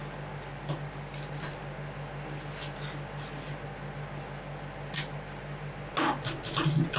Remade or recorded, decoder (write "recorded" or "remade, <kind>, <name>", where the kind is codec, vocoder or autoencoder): recorded